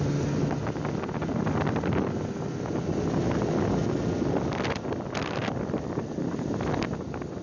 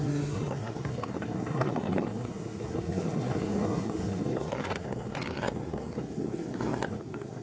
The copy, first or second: second